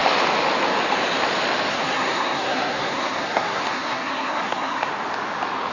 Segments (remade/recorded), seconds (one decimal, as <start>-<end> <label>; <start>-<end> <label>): 0.0-1.7 recorded; 1.7-4.9 remade; 4.9-5.7 recorded